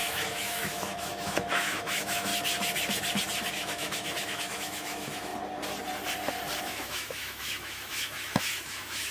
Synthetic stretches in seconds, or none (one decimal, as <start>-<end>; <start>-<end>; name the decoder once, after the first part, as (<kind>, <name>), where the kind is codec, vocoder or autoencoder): 0.0-2.3 (autoencoder, DAC-VAE); 3.5-5.3; 6.6-9.1